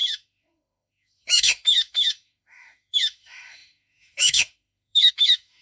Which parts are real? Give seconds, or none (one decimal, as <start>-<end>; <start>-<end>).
none